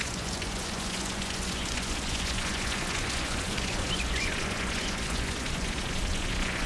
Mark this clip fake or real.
fake